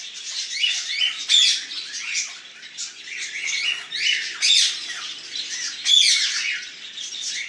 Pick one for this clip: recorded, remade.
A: recorded